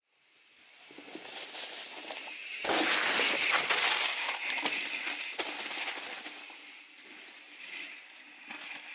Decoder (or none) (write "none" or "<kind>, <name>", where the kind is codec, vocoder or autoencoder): none